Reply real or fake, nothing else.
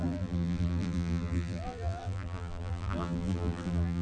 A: fake